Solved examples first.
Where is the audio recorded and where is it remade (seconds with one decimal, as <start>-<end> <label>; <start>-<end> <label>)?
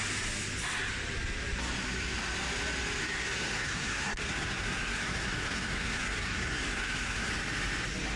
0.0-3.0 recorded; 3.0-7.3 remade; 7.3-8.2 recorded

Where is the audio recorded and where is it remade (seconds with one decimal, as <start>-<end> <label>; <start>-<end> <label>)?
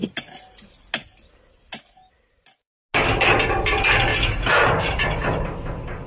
0.0-6.1 recorded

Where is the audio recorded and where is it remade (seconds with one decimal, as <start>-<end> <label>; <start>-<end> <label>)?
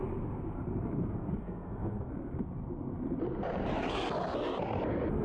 0.0-1.4 recorded; 1.4-2.1 remade; 2.1-5.2 recorded